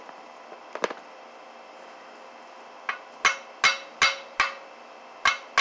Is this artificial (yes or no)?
no